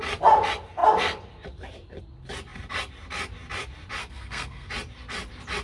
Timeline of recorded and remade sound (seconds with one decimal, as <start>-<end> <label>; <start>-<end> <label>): 0.0-4.0 recorded; 4.0-4.7 remade; 4.7-5.6 recorded